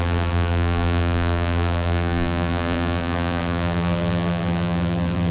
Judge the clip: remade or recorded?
remade